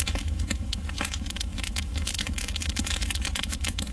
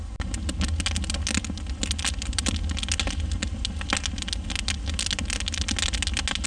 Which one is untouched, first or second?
second